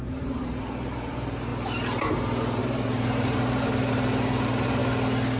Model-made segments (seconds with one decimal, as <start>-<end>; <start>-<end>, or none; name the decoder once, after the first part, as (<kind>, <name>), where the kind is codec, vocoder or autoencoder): 0.0-1.5 (vocoder, BigVGAN v2); 2.6-4.8